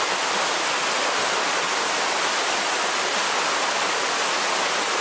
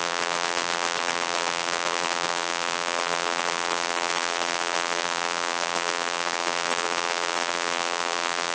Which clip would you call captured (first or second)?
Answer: first